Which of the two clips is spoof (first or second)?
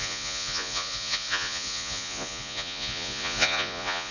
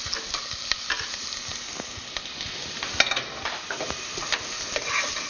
first